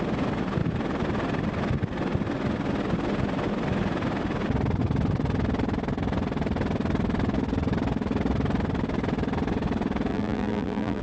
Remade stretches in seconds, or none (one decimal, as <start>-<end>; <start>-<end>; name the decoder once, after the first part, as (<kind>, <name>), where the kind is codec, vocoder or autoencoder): 10.1-11.0 (vocoder, BigVGAN v2)